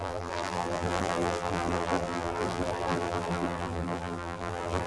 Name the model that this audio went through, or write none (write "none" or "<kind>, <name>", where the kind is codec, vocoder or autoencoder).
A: vocoder, BigVGAN v2